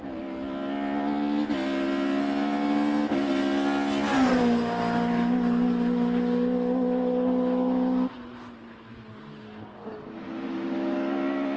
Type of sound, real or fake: real